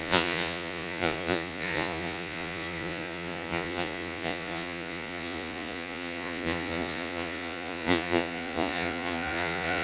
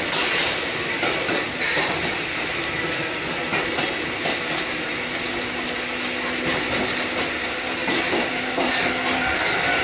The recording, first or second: second